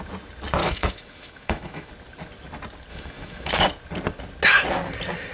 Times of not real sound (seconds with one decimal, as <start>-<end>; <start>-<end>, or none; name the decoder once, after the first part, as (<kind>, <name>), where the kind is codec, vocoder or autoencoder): 0.6-1.9 (autoencoder, DAC-VAE); 2.9-3.5